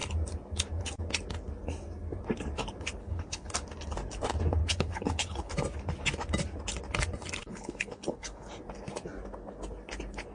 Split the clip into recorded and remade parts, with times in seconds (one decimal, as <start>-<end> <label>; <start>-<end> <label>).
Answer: 0.0-3.0 recorded; 3.0-3.5 remade; 3.5-4.6 recorded; 4.6-5.5 remade; 5.5-7.4 recorded; 7.4-8.5 remade; 8.5-10.3 recorded